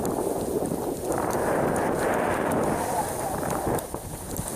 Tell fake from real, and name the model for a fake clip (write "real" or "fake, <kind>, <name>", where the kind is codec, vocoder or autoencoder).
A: real